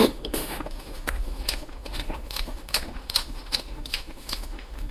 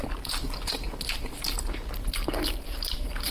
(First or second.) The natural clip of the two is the second